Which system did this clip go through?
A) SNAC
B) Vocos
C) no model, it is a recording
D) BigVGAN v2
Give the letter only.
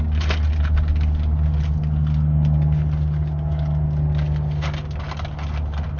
C